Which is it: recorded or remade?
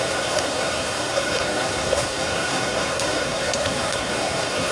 remade